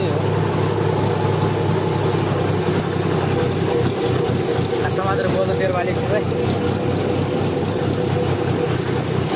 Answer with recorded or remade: recorded